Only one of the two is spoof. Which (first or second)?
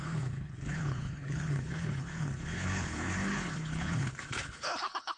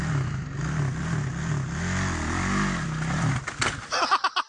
first